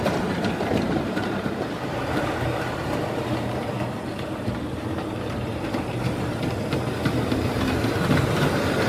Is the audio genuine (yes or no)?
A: no